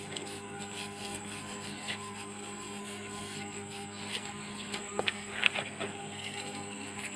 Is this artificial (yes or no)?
yes